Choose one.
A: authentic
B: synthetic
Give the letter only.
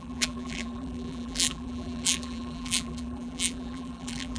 B